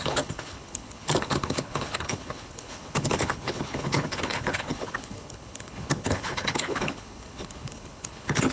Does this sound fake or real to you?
fake